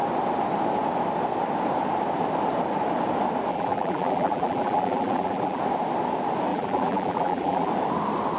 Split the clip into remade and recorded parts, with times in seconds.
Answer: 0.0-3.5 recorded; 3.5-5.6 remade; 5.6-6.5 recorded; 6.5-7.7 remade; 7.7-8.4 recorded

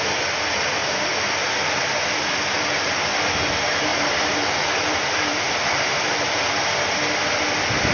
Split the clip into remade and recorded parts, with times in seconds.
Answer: 0.0-3.9 recorded; 3.9-6.6 remade; 6.6-7.9 recorded